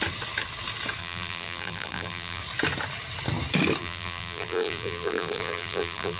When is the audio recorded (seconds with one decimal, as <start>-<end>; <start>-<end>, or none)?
0.0-1.0; 2.4-3.8